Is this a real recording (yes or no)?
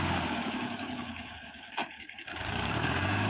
no